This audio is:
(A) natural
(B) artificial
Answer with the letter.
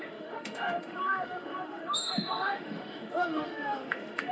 B